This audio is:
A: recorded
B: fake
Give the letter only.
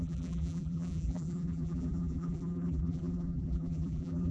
B